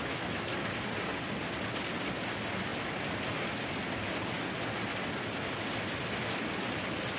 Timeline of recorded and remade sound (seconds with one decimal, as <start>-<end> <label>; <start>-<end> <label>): 0.0-0.5 remade; 0.5-7.2 recorded